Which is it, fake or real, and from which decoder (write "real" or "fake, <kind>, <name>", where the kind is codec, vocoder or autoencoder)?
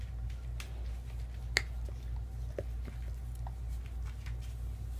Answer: real